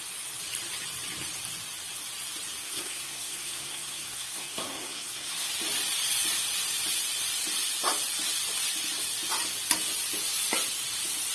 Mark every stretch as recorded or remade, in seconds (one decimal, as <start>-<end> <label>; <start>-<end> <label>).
0.0-2.6 recorded; 2.6-5.5 remade; 5.5-11.3 recorded